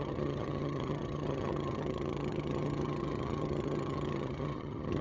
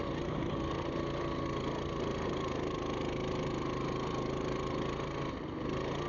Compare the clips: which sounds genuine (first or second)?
second